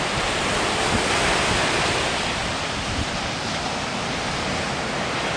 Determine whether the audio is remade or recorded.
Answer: recorded